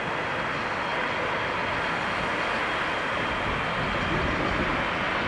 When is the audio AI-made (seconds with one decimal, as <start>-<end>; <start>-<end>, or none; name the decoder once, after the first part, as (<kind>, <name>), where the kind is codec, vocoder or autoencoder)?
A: none